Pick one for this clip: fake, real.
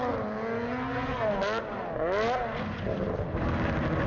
real